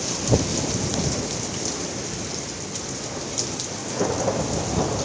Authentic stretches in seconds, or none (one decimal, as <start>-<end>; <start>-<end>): 0.0-5.0

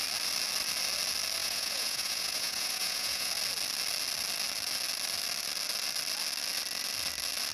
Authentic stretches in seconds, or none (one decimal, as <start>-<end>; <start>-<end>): 0.0-1.4; 3.3-7.5

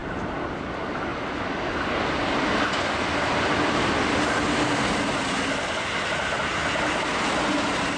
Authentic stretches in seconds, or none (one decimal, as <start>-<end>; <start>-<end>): 0.0-8.0

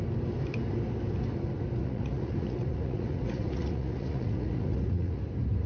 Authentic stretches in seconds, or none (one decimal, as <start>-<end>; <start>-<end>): 0.0-1.8; 5.2-5.7

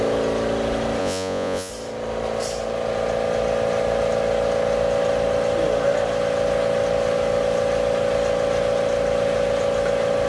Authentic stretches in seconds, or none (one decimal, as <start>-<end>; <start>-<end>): 0.0-1.0; 1.7-10.3